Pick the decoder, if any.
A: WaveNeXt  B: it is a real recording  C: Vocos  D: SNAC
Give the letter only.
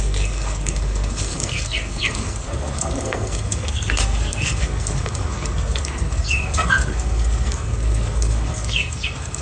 D